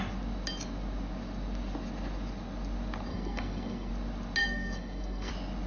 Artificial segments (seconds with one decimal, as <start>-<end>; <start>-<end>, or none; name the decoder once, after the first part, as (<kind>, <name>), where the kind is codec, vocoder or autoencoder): 3.1-3.9 (codec, SNAC); 4.4-5.3